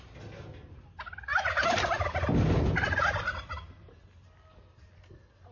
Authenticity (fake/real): real